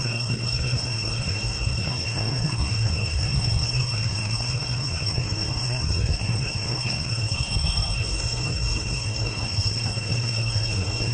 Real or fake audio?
fake